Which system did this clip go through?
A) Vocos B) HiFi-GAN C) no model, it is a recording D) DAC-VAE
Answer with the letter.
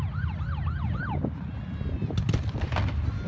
C